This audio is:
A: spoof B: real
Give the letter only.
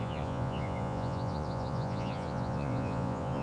A